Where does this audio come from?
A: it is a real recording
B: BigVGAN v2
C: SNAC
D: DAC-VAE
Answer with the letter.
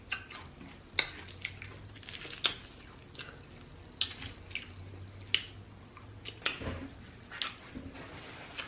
A